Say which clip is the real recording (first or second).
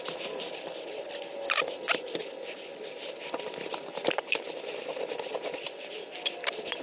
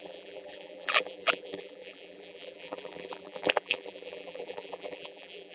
first